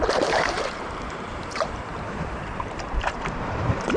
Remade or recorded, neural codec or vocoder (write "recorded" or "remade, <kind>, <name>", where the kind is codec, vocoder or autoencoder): remade, vocoder, BigVGAN v2